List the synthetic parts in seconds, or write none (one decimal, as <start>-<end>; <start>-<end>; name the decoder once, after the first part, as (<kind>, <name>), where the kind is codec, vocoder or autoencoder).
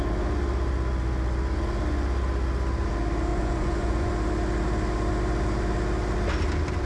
3.3-4.1 (vocoder, Vocos)